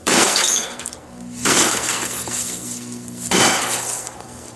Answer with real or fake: fake